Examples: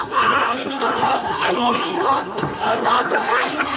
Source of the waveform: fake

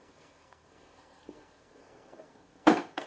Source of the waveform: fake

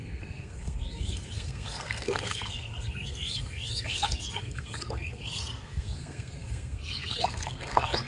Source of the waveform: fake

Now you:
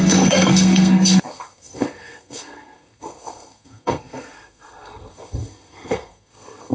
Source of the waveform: fake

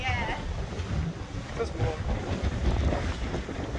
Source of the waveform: real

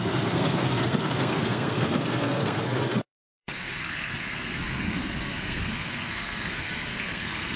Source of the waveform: fake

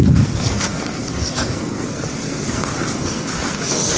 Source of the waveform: fake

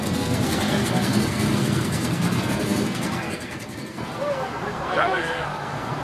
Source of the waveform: fake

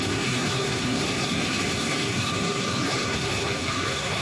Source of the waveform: fake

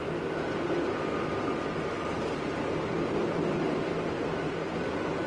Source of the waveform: real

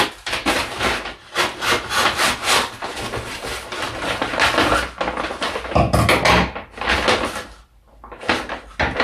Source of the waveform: real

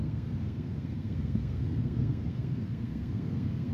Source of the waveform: fake